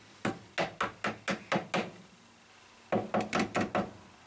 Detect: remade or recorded recorded